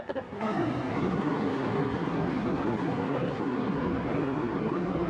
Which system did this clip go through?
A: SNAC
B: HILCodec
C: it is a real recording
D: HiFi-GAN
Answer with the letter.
A